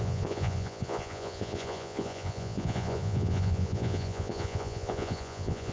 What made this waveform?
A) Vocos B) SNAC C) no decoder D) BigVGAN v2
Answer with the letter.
A